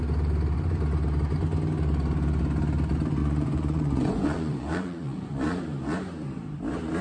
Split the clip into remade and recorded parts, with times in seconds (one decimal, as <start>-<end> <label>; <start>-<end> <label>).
0.0-3.2 recorded; 3.2-5.6 remade; 5.6-7.0 recorded